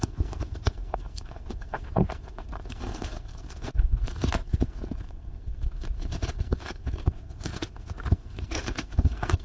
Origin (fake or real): fake